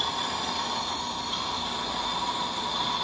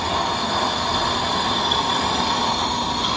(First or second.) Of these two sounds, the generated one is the second